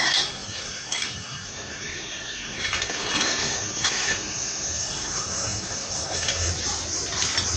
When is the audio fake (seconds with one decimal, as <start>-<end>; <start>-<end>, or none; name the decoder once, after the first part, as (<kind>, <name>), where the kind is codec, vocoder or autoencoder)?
0.0-6.5 (codec, SNAC)